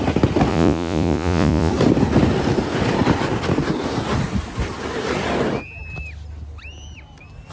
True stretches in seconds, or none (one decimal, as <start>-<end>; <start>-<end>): 0.0-0.5; 1.7-7.5